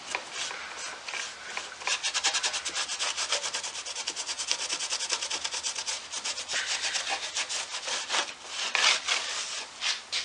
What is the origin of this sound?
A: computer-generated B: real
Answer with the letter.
B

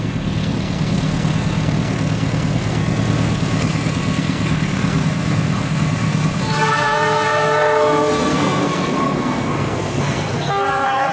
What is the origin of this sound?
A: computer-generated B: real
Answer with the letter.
A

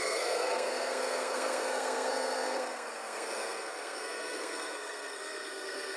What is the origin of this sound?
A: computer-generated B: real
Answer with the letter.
A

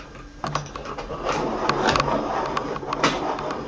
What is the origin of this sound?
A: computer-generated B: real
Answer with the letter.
A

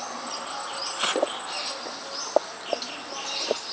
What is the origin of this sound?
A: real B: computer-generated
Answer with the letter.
A